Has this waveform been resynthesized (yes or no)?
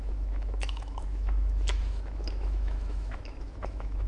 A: yes